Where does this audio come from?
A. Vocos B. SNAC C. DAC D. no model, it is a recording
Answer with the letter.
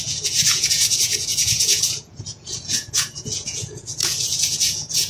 A